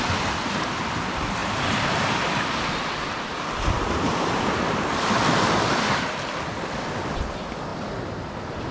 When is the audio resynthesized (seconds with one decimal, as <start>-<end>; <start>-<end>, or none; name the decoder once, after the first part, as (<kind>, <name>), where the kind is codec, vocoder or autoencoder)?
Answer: none